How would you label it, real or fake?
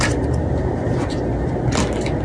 real